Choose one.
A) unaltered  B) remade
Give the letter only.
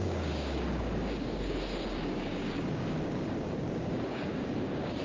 B